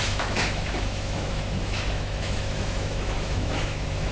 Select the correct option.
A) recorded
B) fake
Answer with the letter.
B